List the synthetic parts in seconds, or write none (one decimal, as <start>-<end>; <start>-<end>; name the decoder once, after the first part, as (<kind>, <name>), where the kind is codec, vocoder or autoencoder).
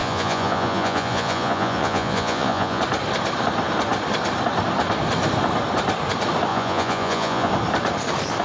0.0-2.8 (vocoder, Vocos); 6.5-7.5